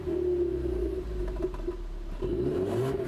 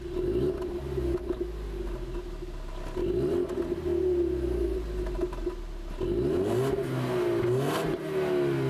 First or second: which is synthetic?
first